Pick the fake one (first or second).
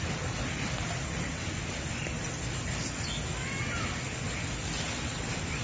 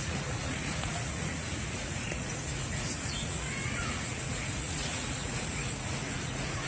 second